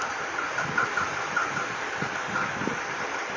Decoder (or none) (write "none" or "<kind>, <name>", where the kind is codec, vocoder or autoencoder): none